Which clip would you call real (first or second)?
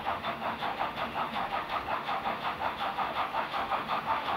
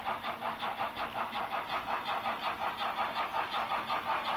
second